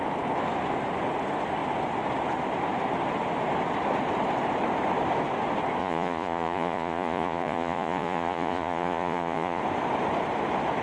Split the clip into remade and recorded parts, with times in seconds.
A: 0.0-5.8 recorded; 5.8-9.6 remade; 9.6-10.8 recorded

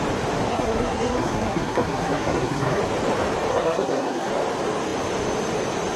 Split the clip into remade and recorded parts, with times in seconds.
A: 0.0-0.5 recorded; 0.5-2.8 remade; 2.8-3.5 recorded; 3.5-4.3 remade; 4.3-6.0 recorded

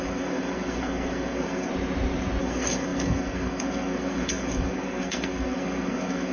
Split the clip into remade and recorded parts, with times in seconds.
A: 0.0-1.7 remade; 1.7-2.4 recorded; 2.4-6.3 remade

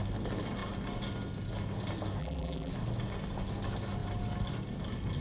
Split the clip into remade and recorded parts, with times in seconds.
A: 0.0-2.2 recorded; 2.2-2.7 remade; 2.7-5.2 recorded

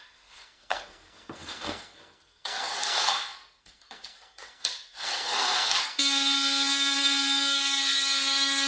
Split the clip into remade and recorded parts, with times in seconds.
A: 0.0-8.7 remade